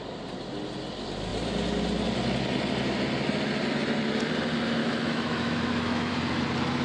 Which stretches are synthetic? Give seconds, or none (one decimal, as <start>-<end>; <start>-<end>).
4.8-6.1